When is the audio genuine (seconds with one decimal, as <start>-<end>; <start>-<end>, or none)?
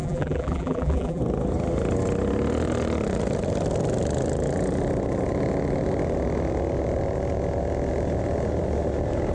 1.2-9.3